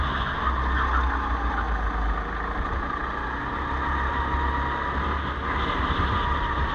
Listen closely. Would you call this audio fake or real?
real